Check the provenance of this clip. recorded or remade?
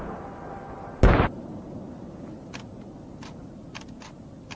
recorded